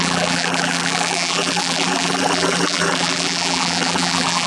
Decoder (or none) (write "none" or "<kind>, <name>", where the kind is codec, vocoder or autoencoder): vocoder, BigVGAN v2